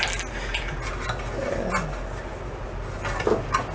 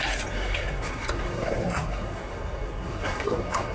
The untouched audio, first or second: first